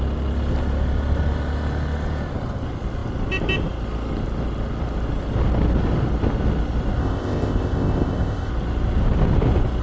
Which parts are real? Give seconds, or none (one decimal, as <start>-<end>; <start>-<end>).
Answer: 0.0-7.0; 8.5-9.8